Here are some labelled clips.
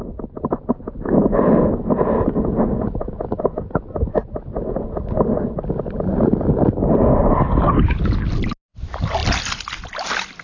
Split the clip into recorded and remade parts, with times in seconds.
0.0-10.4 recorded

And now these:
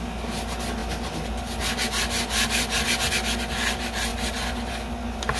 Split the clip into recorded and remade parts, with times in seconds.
0.0-5.4 recorded

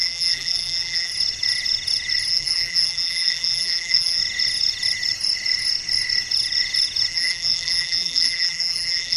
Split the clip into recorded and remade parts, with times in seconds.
0.0-1.1 remade; 1.1-2.3 recorded; 2.3-4.2 remade; 4.2-7.1 recorded; 7.1-9.2 remade